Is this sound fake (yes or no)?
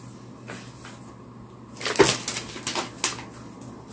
no